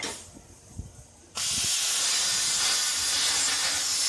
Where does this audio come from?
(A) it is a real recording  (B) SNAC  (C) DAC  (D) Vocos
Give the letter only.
A